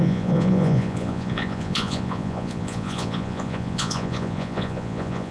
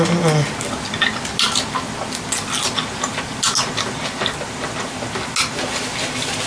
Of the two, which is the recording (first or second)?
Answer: second